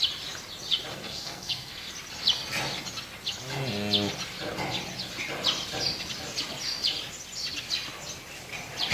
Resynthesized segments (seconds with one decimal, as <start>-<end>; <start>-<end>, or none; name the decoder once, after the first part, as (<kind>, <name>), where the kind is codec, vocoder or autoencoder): 0.9-1.9 (codec, SNAC)